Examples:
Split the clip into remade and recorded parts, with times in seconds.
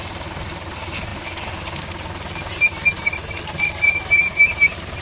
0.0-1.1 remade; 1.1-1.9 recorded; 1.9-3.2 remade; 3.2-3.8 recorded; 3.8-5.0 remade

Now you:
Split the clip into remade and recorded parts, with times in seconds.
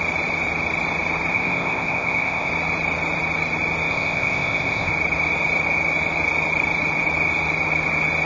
0.0-1.3 recorded; 1.3-2.5 remade; 2.5-3.9 recorded; 3.9-4.9 remade; 4.9-8.3 recorded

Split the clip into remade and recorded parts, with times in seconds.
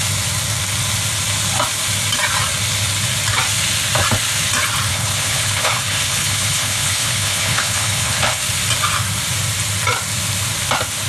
0.0-4.9 recorded; 4.9-8.4 remade; 8.4-11.1 recorded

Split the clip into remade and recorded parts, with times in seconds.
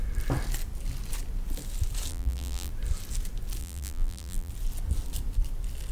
0.0-2.1 recorded; 2.1-2.7 remade; 2.7-3.6 recorded; 3.6-4.5 remade; 4.5-5.9 recorded